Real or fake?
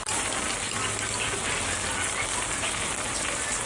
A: real